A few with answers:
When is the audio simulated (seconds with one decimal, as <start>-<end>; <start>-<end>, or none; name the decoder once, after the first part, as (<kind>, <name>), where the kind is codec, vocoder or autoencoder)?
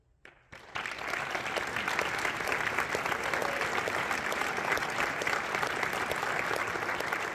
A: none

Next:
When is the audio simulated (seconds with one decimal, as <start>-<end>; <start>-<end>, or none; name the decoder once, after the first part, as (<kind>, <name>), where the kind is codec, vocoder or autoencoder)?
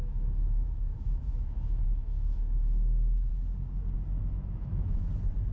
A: 0.0-3.3 (autoencoder, DAC-VAE); 4.2-5.1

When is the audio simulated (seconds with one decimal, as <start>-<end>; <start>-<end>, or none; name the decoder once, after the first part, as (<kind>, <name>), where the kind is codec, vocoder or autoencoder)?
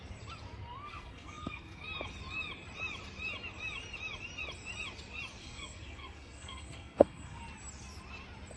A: 0.9-1.8 (codec, SNAC); 5.4-7.4